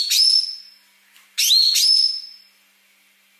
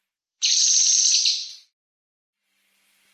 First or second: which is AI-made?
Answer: second